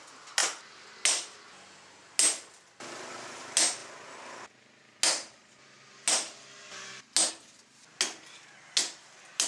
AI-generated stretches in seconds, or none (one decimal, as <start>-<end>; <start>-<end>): none